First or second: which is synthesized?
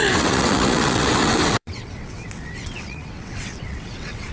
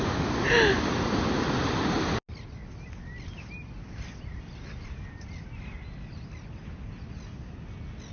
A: first